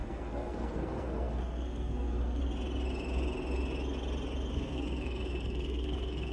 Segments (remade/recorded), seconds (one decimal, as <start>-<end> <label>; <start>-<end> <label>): 0.0-2.4 remade; 2.4-4.5 recorded; 4.5-6.3 remade

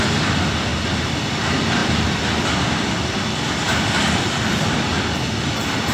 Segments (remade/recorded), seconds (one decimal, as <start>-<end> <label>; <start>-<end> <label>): 0.0-0.7 remade; 0.7-1.3 recorded; 1.3-1.8 remade; 1.8-2.5 recorded; 2.5-4.9 remade; 4.9-5.9 recorded